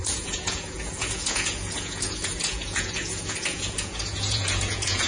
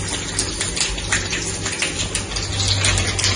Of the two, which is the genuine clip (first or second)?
second